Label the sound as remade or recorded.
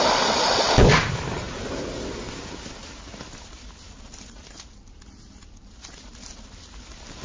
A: recorded